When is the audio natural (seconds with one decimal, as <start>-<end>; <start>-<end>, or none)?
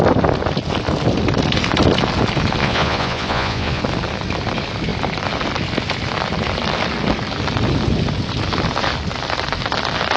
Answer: 0.0-2.6; 3.8-10.2